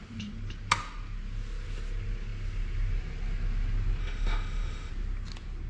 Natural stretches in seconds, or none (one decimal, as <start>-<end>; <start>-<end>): 0.0-4.0; 4.9-5.7